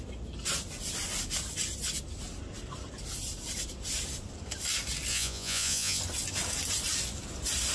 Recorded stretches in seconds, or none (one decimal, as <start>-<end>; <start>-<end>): 0.0-5.1; 6.0-7.7